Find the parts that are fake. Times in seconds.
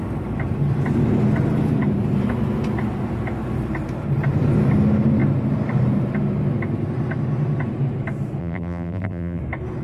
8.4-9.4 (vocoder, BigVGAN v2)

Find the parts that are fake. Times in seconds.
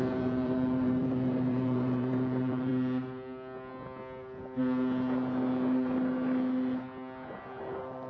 0.0-2.7 (vocoder, BigVGAN v2); 7.6-8.1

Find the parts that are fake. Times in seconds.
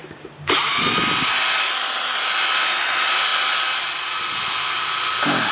0.0-0.7 (vocoder, BigVGAN v2)